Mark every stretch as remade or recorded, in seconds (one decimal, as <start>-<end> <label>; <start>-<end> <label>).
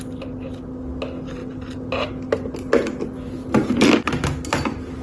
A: 0.0-5.0 recorded